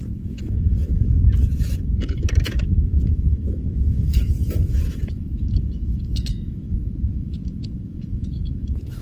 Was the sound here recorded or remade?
remade